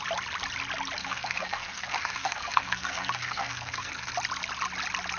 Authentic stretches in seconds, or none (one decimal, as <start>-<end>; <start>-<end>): 0.0-1.0; 4.1-5.2